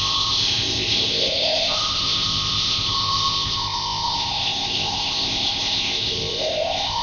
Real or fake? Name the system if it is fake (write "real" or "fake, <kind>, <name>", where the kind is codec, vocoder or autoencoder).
fake, codec, ZipCodec